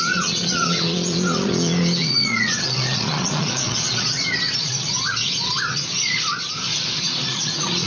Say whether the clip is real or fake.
fake